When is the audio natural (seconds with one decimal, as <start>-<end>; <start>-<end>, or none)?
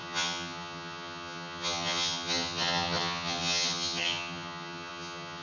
none